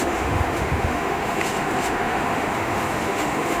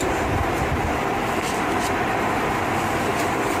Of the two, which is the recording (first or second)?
second